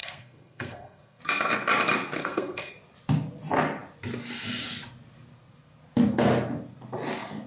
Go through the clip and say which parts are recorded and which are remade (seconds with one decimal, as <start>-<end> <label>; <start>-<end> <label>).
0.0-1.2 remade; 1.2-2.2 recorded; 2.2-2.7 remade; 2.7-7.5 recorded